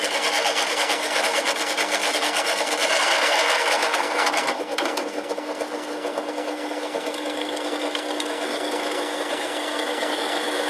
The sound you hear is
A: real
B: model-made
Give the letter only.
B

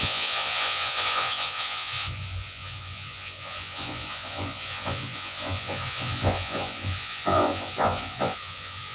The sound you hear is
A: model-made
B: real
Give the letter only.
A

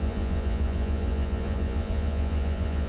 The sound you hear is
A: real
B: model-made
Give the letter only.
B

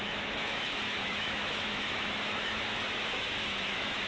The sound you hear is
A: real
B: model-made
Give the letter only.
B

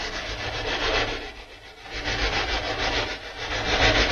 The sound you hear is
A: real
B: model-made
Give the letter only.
A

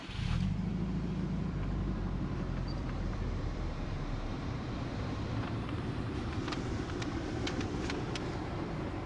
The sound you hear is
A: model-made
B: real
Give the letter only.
A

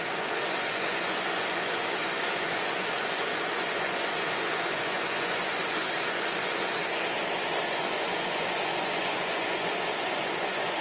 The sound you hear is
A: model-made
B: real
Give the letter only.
A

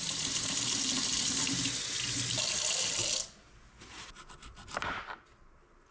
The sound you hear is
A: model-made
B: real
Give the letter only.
B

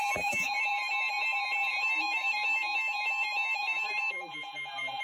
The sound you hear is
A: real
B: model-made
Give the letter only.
B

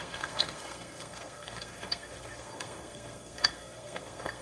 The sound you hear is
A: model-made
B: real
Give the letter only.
A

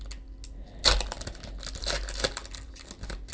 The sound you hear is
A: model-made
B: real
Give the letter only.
B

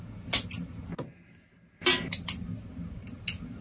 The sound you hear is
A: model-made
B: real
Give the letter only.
B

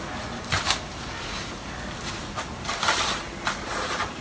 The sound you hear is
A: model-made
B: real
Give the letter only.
B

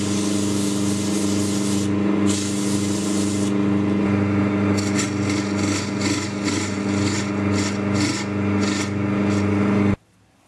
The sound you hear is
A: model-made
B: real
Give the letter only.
B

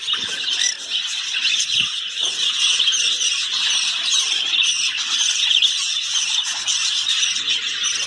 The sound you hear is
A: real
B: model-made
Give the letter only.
A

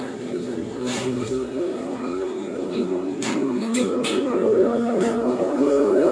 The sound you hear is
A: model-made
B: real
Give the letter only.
A